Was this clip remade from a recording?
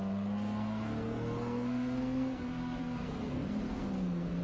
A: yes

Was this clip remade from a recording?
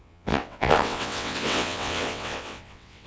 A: yes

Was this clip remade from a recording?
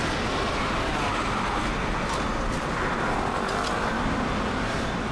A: no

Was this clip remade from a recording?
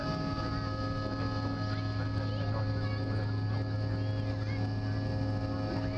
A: no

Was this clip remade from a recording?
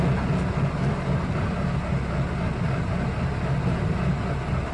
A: no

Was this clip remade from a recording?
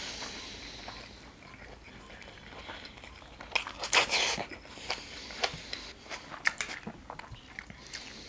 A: no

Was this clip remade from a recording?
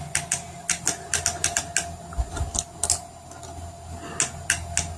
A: no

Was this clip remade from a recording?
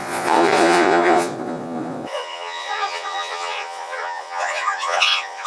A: yes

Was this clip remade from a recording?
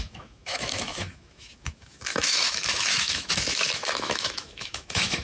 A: yes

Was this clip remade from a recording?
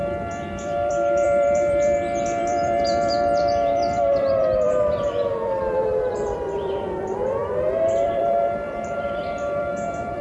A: yes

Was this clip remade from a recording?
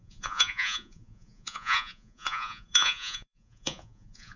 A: yes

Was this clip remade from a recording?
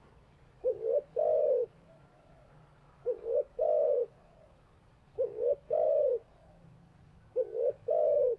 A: yes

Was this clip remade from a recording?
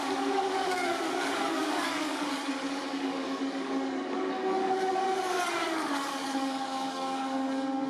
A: yes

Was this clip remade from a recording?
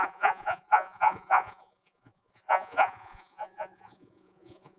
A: yes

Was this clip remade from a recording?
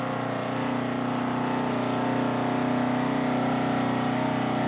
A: no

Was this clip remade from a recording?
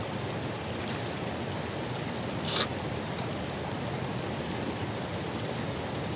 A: no